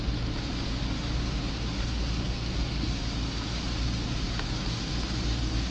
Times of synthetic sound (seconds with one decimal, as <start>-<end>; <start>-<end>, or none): 2.2-2.9